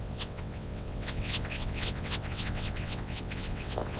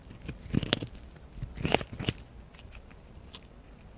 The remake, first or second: first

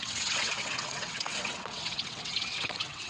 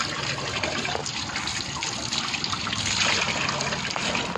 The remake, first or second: first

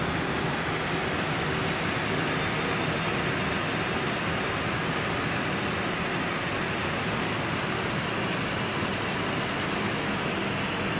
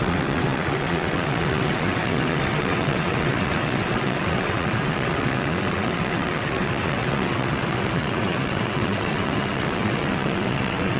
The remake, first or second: second